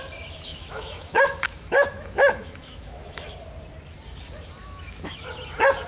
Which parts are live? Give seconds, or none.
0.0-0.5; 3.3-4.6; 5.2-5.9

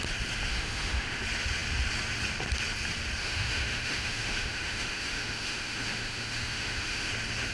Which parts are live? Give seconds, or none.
0.0-0.5; 1.2-3.2; 7.1-7.5

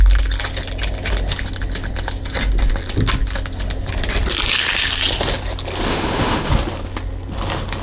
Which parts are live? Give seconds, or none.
0.0-5.9; 6.5-7.8

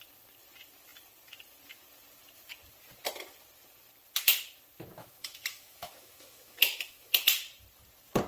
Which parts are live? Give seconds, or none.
0.0-5.0; 7.1-8.3

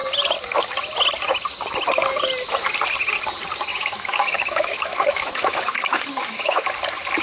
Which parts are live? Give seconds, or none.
0.0-3.7; 6.7-7.2

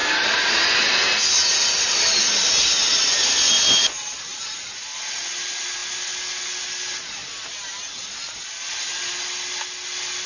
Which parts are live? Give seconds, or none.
0.0-10.3

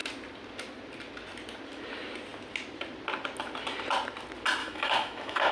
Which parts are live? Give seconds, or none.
0.0-4.6